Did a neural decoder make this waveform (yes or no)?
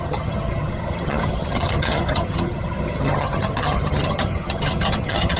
yes